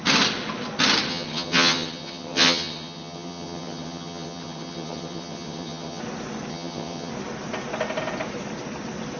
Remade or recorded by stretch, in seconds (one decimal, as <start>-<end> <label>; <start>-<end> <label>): 0.0-1.1 recorded; 1.1-6.0 remade; 6.0-6.5 recorded; 6.5-7.1 remade; 7.1-9.2 recorded

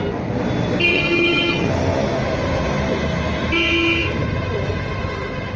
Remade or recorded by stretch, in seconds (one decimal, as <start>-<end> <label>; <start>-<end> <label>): 0.0-0.9 recorded; 0.9-1.7 remade; 1.7-5.6 recorded